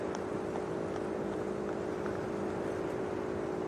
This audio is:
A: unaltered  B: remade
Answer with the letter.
A